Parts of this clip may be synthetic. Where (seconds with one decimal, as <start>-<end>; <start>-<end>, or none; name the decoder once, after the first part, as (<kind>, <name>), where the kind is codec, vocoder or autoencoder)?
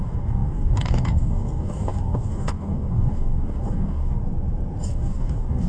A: 0.0-4.2 (codec, DAC); 4.8-5.7